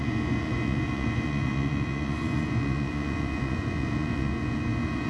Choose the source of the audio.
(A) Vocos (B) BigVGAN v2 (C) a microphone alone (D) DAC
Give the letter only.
A